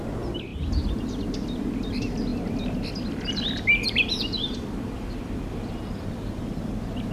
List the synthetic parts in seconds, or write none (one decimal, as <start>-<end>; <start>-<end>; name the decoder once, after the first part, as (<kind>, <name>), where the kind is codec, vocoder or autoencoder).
2.3-6.4 (vocoder, BigVGAN v2)